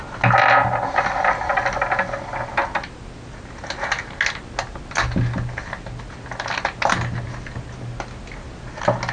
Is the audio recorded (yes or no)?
yes